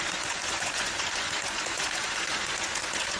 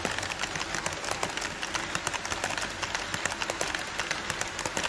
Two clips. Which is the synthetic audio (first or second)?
first